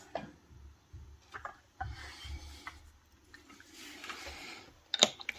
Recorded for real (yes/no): yes